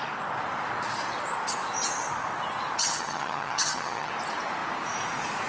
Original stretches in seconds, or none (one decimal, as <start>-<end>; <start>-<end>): 0.0-2.8; 4.1-5.5